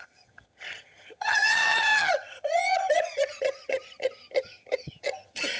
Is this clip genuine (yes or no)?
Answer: no